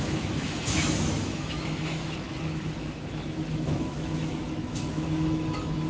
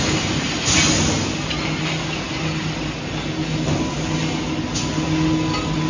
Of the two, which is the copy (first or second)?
first